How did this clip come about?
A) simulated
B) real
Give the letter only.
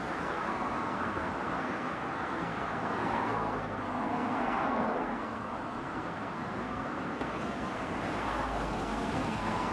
A